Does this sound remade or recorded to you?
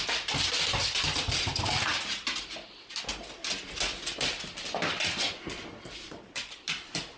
recorded